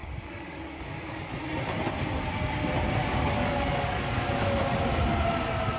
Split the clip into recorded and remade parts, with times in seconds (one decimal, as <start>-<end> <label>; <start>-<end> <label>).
0.0-1.3 remade; 1.3-3.0 recorded; 3.0-4.6 remade; 4.6-5.8 recorded